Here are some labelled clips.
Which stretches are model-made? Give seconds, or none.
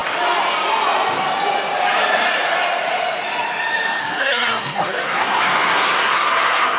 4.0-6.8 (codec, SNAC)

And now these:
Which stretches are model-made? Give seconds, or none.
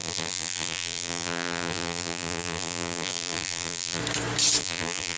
0.0-4.0 (vocoder, BigVGAN v2); 4.6-5.2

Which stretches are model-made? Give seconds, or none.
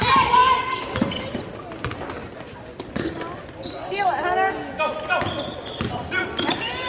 0.0-2.2 (vocoder, BigVGAN v2); 5.8-6.9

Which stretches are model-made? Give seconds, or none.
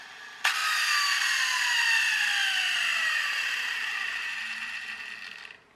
none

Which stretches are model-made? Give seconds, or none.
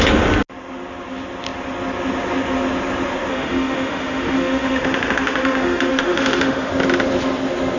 3.3-6.7 (autoencoder, DAC-VAE)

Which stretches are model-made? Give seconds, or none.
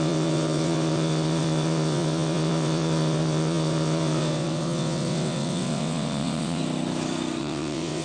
0.0-6.6 (vocoder, WaveNeXt); 7.4-8.0